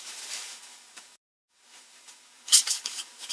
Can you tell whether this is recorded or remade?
remade